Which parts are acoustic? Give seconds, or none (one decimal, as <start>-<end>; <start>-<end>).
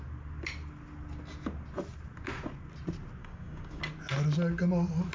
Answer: 0.0-3.2; 3.8-5.1